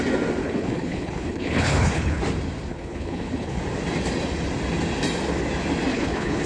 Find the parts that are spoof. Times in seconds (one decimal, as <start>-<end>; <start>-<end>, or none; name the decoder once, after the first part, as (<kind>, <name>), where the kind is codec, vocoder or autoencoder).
0.4-2.2 (codec, HILCodec); 2.7-3.6; 5.9-6.5